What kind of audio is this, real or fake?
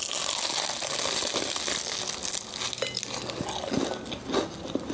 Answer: real